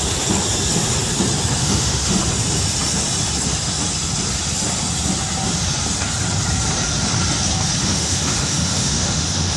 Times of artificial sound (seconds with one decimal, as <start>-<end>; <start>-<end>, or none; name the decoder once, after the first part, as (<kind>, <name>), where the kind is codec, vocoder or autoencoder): 1.6-2.2 (autoencoder, DAC-VAE); 7.8-9.6